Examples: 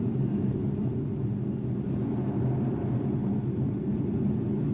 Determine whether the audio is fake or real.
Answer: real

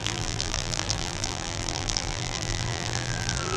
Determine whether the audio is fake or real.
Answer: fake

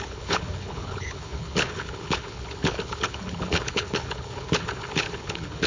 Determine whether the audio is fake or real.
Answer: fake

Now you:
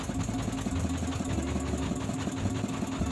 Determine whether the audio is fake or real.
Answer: real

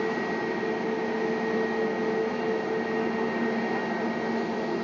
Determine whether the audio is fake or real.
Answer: real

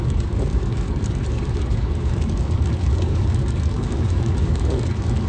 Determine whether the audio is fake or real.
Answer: fake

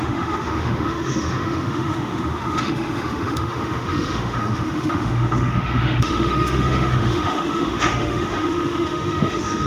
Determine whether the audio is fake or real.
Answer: fake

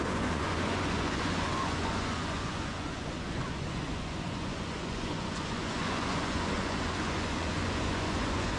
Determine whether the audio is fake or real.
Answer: fake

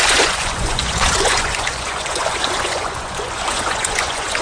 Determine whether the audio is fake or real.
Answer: fake